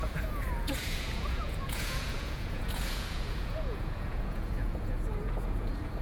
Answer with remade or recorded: remade